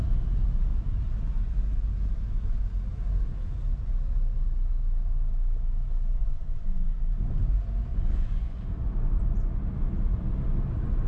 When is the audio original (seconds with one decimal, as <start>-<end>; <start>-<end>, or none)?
0.0-6.2; 6.9-7.9; 8.6-11.1